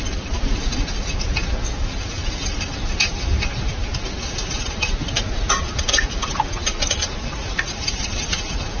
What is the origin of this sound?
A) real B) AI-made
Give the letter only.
B